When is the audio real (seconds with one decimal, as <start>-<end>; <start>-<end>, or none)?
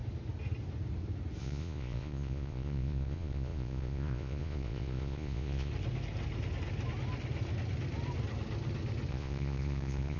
0.0-1.4; 5.7-9.1